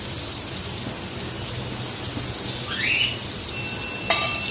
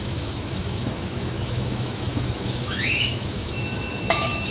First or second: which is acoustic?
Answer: first